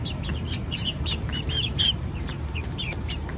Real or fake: fake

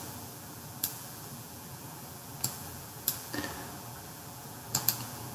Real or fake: fake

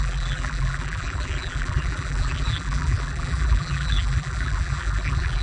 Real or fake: fake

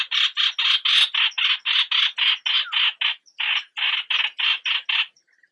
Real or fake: real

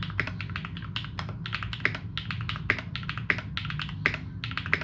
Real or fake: real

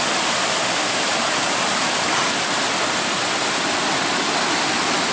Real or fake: real